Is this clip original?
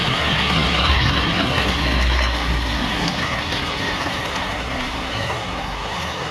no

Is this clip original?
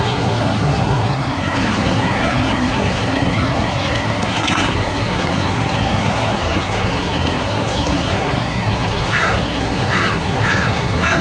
no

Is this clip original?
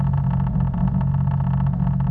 yes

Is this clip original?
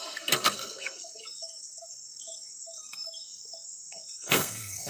no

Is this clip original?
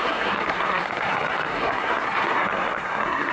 no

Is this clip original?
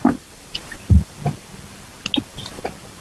yes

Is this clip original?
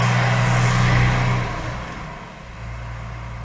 yes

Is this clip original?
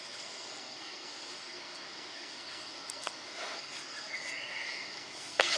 no